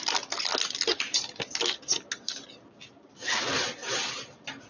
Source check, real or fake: real